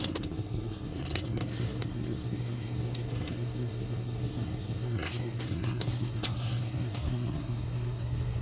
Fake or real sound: fake